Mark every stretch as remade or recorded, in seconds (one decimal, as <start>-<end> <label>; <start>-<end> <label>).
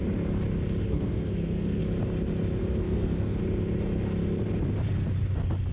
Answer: 0.0-0.8 recorded; 0.8-1.8 remade; 1.8-2.6 recorded; 2.6-3.4 remade; 3.4-5.7 recorded